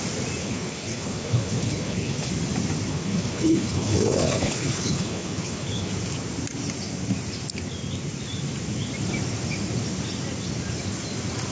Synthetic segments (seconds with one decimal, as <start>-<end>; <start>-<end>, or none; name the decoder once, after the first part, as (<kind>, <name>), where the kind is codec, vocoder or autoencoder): 0.4-2.3 (codec, HILCodec); 2.9-5.9